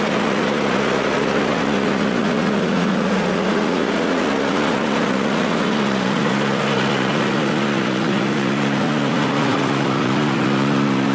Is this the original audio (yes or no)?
no